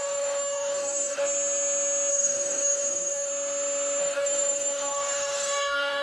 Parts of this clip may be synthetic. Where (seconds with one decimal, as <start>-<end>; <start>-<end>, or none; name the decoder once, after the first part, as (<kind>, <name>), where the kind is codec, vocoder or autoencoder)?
0.0-1.2 (codec, DAC); 2.1-3.3; 4.0-6.0